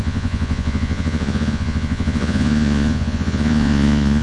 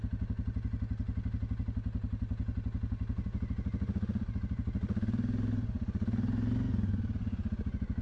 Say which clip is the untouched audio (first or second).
second